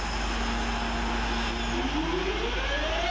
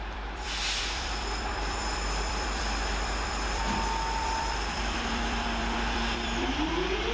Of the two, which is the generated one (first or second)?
second